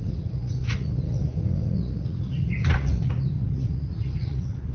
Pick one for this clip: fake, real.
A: fake